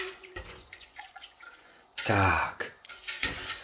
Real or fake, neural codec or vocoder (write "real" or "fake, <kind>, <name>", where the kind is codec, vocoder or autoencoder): fake, vocoder, Vocos